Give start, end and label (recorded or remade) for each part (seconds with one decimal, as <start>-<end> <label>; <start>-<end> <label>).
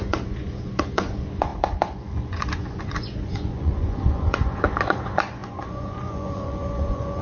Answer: 0.0-7.2 remade